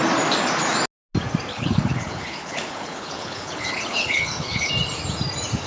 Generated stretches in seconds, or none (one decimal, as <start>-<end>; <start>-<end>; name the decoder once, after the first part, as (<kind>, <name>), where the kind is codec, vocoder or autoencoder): 1.5-4.7 (codec, HILCodec)